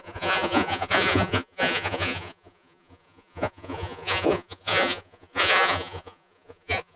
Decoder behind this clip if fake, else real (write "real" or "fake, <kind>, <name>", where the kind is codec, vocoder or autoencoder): fake, vocoder, Vocos